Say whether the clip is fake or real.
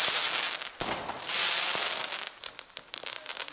real